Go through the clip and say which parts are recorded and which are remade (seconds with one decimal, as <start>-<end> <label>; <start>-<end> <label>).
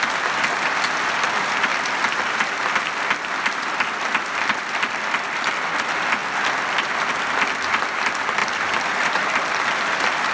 0.0-1.7 recorded; 1.7-5.0 remade; 5.0-8.4 recorded; 8.4-9.1 remade; 9.1-10.3 recorded